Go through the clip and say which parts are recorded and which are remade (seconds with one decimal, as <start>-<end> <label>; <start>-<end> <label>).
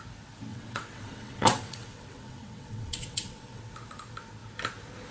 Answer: 0.0-0.5 recorded; 0.5-3.6 remade; 3.6-5.1 recorded